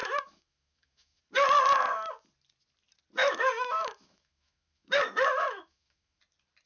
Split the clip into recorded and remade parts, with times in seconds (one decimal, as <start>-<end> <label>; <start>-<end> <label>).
0.0-1.2 remade; 1.2-3.2 recorded; 3.2-6.2 remade; 6.2-6.7 recorded